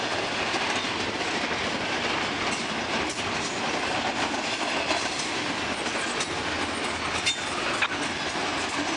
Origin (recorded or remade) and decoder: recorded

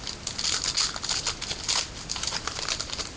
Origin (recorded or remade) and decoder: recorded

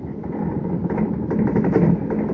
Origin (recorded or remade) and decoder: recorded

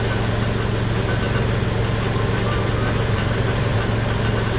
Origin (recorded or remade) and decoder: recorded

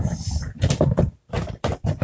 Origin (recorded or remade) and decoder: remade, vocoder, BigVGAN v2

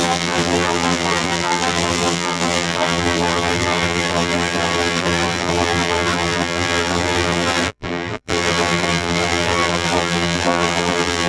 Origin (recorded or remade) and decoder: remade, vocoder, BigVGAN v2